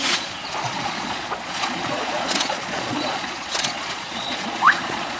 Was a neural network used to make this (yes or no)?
yes